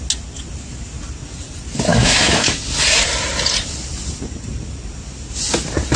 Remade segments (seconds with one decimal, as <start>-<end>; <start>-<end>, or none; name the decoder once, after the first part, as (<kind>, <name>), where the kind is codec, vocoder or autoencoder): 1.9-2.6 (autoencoder, DAC-VAE)